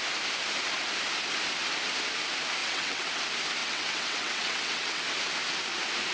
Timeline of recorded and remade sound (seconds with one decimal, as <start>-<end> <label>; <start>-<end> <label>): 0.0-2.6 recorded; 2.6-3.1 remade; 3.1-3.6 recorded; 3.6-5.0 remade; 5.0-6.1 recorded